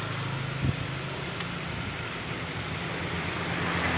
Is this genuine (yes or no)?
yes